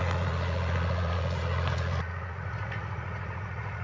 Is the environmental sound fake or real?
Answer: fake